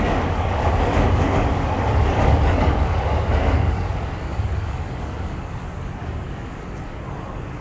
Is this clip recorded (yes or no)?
no